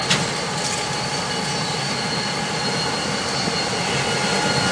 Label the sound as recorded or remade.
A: recorded